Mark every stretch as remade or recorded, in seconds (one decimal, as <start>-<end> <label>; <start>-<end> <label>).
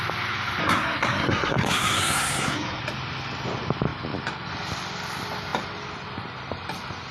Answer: 0.0-0.6 recorded; 0.6-2.8 remade; 2.8-7.1 recorded